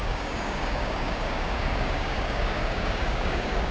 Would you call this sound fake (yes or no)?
yes